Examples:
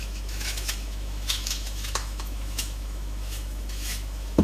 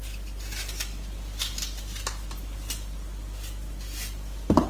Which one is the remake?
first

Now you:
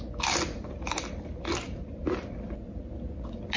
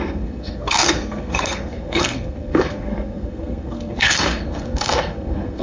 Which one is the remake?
second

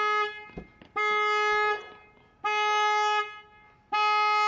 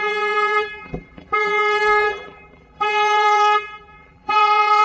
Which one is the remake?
second